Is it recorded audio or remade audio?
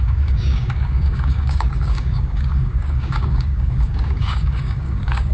remade